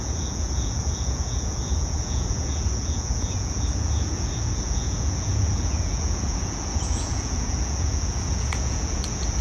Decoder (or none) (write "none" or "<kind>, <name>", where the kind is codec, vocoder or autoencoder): vocoder, Vocos